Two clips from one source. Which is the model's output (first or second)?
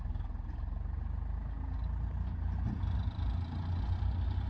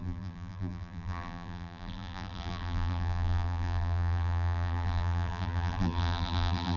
second